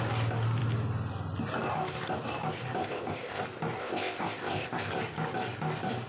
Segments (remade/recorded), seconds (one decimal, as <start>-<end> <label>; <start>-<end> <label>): 0.0-2.8 recorded; 2.8-3.4 remade; 3.4-3.8 recorded; 3.8-4.9 remade; 4.9-6.1 recorded